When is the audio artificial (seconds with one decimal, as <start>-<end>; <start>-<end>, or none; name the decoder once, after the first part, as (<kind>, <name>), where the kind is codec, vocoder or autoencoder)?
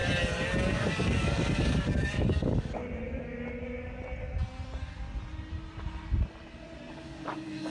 0.7-2.8 (codec, DAC); 6.9-7.7